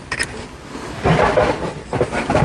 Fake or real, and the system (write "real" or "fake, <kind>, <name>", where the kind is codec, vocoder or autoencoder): real